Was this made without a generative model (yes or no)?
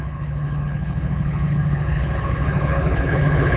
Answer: no